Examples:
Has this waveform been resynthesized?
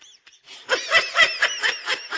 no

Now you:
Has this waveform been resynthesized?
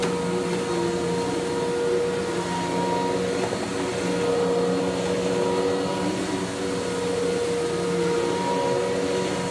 no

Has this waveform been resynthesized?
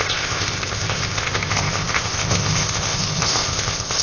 yes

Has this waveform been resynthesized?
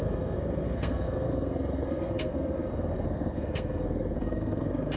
yes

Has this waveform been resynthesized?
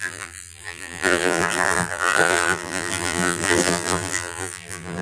yes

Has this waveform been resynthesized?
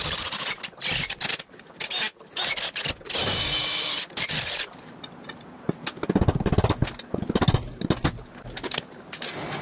no